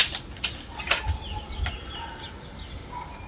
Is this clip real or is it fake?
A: real